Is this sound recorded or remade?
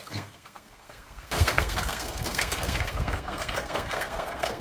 remade